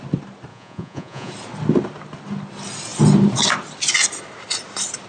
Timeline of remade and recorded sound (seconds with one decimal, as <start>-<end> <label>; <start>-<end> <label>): 0.0-0.5 recorded; 0.5-1.3 remade; 1.3-5.1 recorded